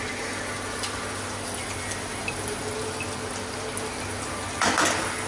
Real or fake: real